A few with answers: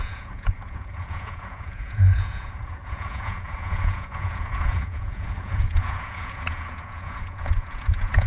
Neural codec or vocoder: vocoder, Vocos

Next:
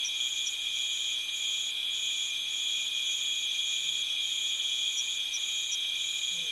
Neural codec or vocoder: vocoder, Vocos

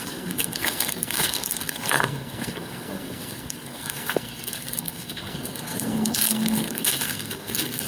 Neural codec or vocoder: codec, SNAC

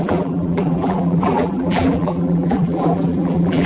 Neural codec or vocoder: vocoder, BigVGAN v2